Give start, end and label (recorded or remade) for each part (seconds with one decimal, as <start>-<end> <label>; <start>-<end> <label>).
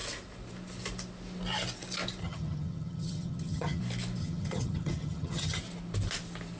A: 0.0-2.2 recorded; 2.2-3.8 remade; 3.8-4.2 recorded; 4.2-5.6 remade; 5.6-6.6 recorded